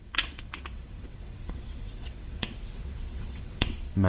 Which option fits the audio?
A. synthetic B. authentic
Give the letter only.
A